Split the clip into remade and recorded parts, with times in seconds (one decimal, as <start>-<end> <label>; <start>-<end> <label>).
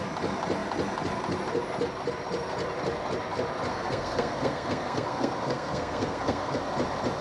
0.0-3.7 recorded; 3.7-6.6 remade; 6.6-7.2 recorded